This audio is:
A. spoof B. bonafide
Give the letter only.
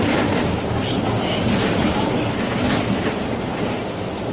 B